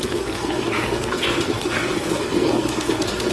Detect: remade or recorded remade